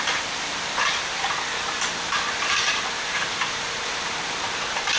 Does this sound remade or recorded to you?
remade